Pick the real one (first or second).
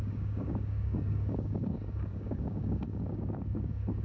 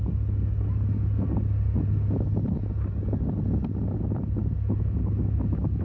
second